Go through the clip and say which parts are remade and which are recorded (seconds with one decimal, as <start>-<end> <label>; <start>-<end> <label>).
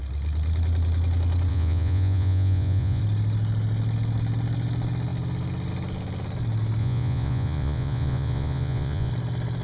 0.0-1.5 recorded; 1.5-3.0 remade; 3.0-6.8 recorded; 6.8-9.1 remade; 9.1-9.6 recorded